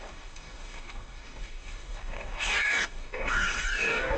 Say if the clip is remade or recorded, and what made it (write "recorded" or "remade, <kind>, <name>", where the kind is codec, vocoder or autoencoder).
remade, codec, DAC